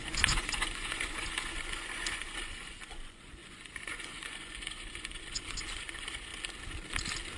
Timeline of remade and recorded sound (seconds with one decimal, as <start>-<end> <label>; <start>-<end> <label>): 0.0-6.3 remade; 6.3-7.4 recorded